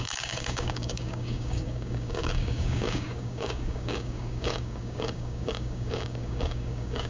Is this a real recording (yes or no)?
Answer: no